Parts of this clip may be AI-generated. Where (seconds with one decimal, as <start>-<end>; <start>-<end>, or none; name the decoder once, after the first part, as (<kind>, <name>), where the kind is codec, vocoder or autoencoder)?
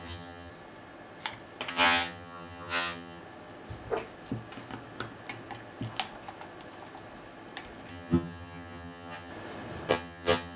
0.0-0.5 (vocoder, HiFi-GAN); 1.7-3.2; 7.9-9.3; 9.9-10.6